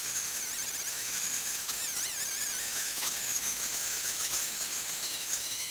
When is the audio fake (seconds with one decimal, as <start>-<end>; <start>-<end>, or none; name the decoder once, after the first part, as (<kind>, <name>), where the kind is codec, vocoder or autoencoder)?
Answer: 0.0-0.4 (autoencoder, DAC-VAE); 0.9-1.8; 2.6-5.7